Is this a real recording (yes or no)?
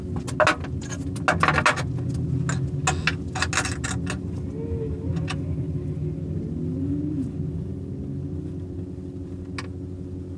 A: yes